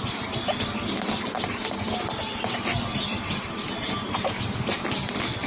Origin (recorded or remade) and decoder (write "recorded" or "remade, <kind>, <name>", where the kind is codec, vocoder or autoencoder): recorded